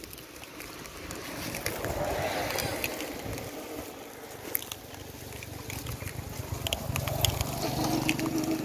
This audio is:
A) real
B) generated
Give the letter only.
A